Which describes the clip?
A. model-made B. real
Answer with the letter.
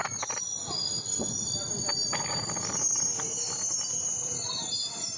B